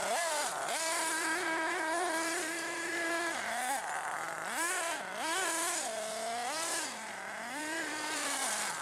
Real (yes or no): no